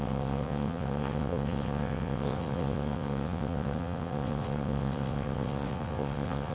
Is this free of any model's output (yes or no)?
no